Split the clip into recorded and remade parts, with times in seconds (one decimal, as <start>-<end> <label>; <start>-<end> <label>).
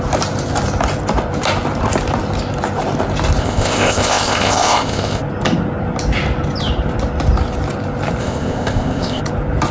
0.0-3.4 recorded; 3.4-5.2 remade; 5.2-8.2 recorded; 8.2-9.2 remade; 9.2-9.7 recorded